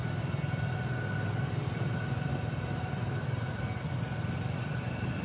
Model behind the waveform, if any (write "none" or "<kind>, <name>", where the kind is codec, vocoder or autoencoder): none